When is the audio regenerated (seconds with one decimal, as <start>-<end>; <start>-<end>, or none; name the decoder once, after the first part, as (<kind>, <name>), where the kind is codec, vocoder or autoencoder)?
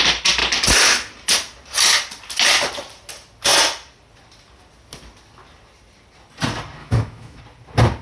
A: 6.8-7.4 (autoencoder, DAC-VAE)